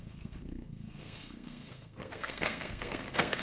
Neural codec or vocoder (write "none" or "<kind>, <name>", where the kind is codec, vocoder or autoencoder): codec, SNAC